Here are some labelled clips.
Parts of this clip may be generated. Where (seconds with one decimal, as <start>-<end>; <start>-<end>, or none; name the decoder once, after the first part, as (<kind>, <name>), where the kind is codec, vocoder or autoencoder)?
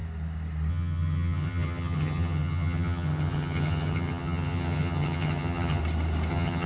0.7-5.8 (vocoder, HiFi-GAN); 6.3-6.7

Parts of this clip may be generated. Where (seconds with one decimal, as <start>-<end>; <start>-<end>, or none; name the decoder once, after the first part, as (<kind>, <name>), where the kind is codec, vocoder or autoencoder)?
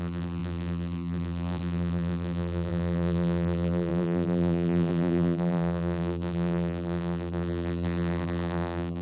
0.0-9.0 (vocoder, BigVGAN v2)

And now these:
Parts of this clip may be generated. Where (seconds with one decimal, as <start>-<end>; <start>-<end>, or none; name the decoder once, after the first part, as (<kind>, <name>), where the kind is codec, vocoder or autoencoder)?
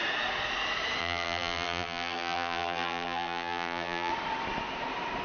1.0-4.1 (vocoder, BigVGAN v2)